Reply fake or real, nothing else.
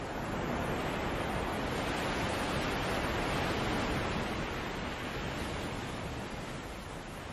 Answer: real